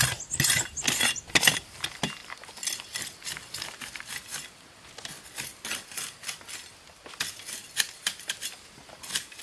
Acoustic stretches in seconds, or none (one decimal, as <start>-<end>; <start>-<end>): 0.0-9.4